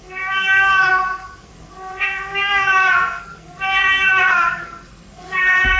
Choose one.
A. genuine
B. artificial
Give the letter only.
B